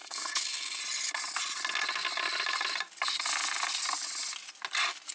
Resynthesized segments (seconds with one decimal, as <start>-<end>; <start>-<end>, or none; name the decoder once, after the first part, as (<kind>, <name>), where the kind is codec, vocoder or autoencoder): 0.0-0.8 (codec, SNAC)